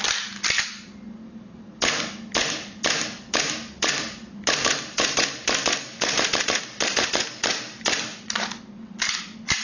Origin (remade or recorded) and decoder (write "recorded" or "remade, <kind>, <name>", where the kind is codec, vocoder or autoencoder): recorded